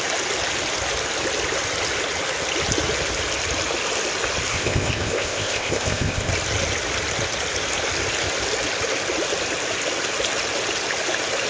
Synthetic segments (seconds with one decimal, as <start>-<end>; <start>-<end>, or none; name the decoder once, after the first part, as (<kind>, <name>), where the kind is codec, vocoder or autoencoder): 4.5-6.3 (codec, ZipCodec)